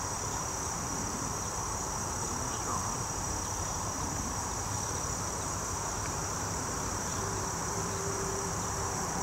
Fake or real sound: fake